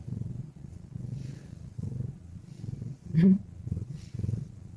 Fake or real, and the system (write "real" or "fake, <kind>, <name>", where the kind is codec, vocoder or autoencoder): fake, vocoder, Vocos